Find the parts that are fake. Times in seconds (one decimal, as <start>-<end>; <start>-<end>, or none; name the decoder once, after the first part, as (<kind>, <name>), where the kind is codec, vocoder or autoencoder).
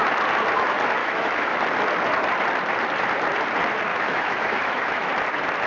1.0-1.6 (autoencoder, DAC-VAE); 3.9-5.1